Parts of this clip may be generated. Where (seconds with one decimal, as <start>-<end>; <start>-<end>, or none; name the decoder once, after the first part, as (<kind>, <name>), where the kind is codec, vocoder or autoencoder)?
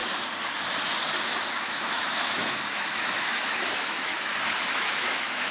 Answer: 1.6-4.1 (autoencoder, DAC-VAE); 4.7-5.5